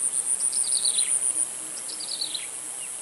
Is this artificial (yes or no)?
no